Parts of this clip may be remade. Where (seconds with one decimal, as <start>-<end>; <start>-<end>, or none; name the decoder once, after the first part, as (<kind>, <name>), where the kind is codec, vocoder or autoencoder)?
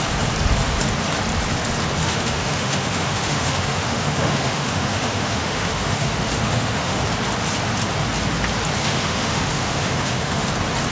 2.0-7.0 (autoencoder, DAC-VAE); 8.8-10.5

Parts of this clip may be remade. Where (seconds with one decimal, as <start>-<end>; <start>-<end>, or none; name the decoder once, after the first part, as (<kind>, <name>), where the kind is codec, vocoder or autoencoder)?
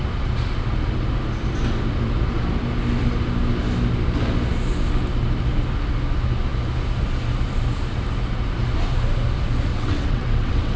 9.7-10.8 (vocoder, WaveNeXt)